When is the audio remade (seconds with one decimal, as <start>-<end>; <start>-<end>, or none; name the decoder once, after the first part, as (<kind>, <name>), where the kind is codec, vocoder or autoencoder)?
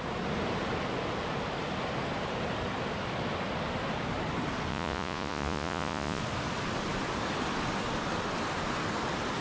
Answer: 4.7-6.2 (vocoder, Vocos)